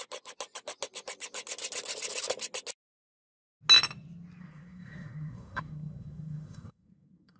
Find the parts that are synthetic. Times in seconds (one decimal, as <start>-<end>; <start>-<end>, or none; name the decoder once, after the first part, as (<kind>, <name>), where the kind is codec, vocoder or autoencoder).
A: 4.4-7.4 (codec, SNAC)